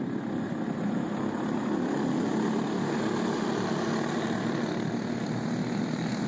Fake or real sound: real